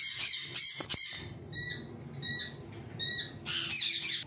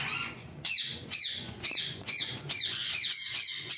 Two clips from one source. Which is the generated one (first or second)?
second